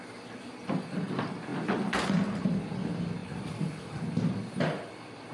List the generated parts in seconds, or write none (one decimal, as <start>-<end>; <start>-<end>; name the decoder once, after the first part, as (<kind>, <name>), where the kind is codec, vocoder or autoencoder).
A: 3.2-4.0 (vocoder, BigVGAN v2)